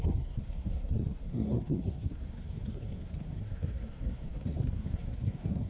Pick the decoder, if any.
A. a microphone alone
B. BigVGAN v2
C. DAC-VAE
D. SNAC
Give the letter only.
D